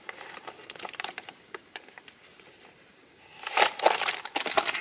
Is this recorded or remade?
remade